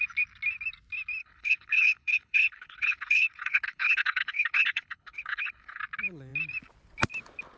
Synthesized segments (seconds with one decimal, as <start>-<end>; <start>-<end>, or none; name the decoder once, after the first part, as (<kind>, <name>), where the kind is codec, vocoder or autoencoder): 1.2-5.8 (codec, HILCodec)

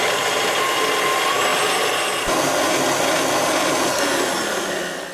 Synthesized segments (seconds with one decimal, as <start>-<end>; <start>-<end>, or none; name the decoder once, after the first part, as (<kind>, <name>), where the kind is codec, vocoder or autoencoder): none

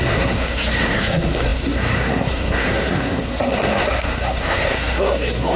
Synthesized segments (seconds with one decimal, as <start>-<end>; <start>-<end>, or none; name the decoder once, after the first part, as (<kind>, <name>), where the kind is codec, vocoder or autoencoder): 0.0-5.6 (codec, SNAC)